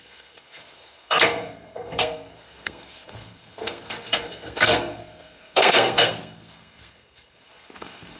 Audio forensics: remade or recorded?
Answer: remade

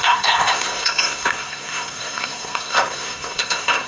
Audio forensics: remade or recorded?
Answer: remade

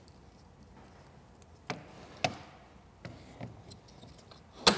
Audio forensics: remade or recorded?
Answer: recorded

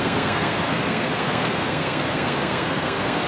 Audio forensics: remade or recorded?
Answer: remade